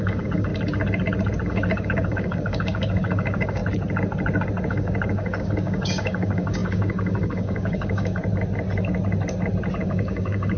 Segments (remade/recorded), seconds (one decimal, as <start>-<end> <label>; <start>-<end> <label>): 0.0-0.5 remade; 0.5-1.5 recorded; 1.5-3.6 remade; 3.6-4.7 recorded; 4.7-8.2 remade; 8.2-9.8 recorded; 9.8-10.6 remade